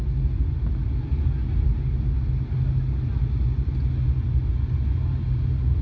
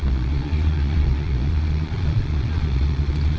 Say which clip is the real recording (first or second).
first